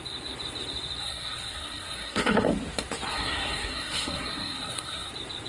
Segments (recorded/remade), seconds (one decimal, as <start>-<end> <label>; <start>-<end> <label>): 0.0-1.0 recorded; 1.0-2.5 remade; 2.5-3.1 recorded; 3.1-5.1 remade; 5.1-5.5 recorded